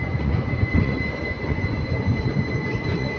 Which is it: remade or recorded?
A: remade